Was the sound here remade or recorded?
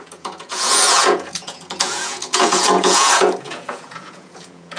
remade